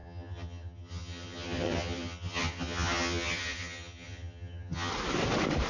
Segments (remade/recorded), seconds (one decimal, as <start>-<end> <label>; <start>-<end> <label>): 0.0-4.9 remade; 4.9-5.7 recorded